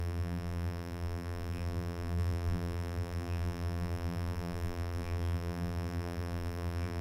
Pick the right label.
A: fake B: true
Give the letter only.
A